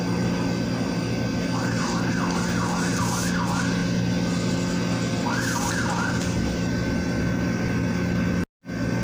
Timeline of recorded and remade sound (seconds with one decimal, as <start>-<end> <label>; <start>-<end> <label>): 0.0-9.0 recorded